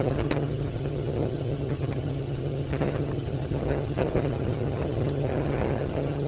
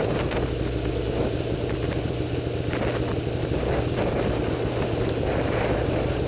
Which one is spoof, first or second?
first